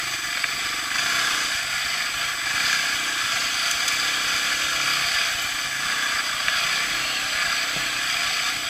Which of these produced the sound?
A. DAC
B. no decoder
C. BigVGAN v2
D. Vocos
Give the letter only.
B